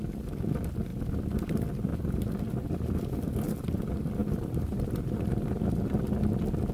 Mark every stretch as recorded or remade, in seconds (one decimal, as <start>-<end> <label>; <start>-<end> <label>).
0.0-1.9 recorded; 1.9-2.9 remade; 2.9-4.2 recorded; 4.2-5.7 remade; 5.7-6.7 recorded